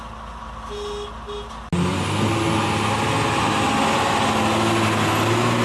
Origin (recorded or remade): recorded